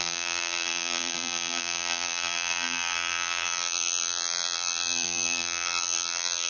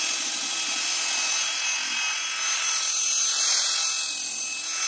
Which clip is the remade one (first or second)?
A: first